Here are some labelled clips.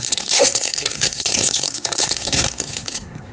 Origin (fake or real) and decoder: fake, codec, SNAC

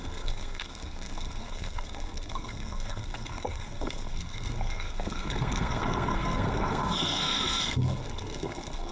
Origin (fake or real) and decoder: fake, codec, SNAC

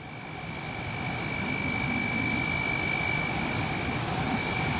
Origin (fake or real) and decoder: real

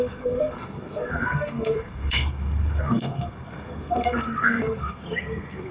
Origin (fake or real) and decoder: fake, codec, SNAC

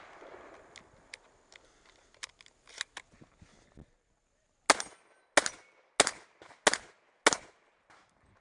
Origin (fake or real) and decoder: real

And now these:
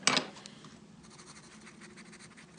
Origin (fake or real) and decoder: real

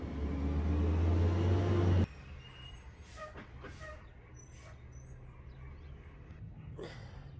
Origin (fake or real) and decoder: real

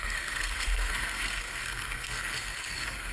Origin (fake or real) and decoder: fake, codec, SNAC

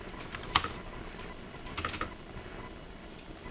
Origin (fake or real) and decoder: real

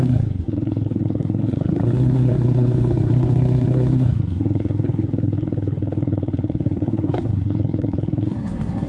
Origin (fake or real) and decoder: fake, codec, SNAC